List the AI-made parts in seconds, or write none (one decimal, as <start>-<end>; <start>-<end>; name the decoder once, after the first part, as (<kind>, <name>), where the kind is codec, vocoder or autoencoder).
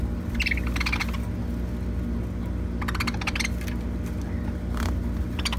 none